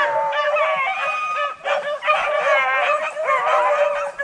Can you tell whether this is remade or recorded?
recorded